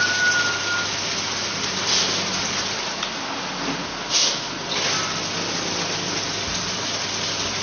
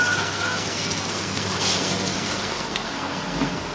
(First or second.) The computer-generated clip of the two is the second